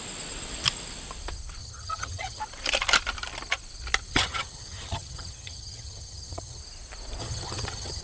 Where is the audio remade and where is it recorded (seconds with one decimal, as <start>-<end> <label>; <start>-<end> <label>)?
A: 0.0-1.6 recorded; 1.6-2.4 remade; 2.4-4.1 recorded; 4.1-6.6 remade; 6.6-7.2 recorded; 7.2-8.0 remade